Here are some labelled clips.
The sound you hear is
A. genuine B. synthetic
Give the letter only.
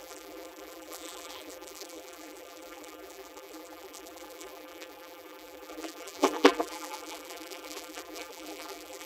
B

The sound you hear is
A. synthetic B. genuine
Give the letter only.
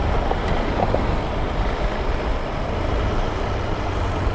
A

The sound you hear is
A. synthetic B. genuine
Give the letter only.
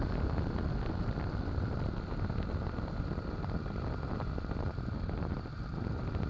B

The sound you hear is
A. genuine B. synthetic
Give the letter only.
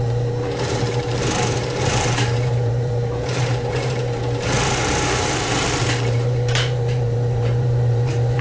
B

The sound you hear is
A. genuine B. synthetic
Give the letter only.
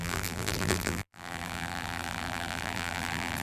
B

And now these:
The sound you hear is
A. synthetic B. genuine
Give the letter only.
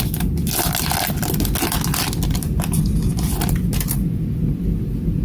B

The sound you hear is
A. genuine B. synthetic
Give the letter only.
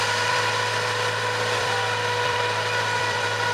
B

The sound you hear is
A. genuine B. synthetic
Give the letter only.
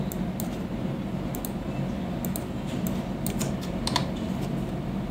A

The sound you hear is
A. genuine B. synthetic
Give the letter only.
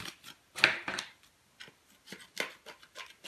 A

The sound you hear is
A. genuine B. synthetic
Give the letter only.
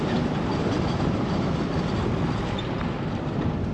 B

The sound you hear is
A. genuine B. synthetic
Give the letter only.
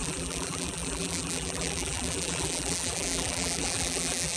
B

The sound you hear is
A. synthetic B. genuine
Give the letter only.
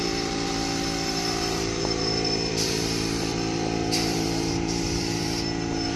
A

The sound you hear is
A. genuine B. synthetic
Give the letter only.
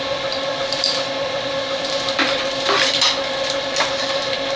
B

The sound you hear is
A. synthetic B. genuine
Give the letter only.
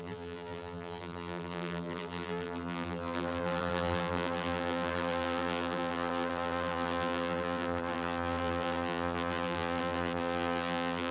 A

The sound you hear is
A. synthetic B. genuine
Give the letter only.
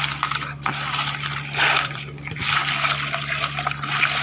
A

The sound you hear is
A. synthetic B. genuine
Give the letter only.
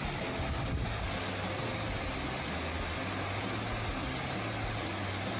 B